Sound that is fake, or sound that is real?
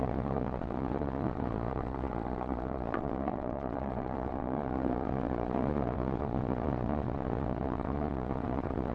fake